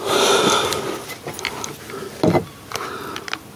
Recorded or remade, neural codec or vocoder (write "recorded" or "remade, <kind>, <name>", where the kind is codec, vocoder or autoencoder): recorded